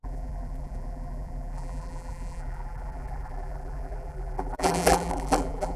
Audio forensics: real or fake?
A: fake